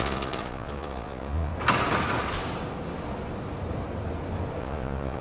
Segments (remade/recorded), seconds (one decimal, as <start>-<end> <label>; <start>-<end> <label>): 0.0-1.5 remade; 1.5-4.6 recorded; 4.6-5.2 remade